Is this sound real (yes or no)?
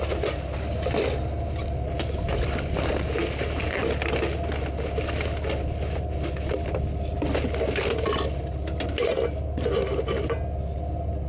yes